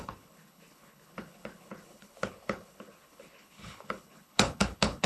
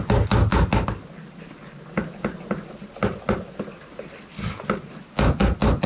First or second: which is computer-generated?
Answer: first